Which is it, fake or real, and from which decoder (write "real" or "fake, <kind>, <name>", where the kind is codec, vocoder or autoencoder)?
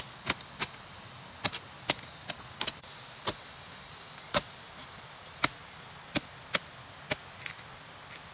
real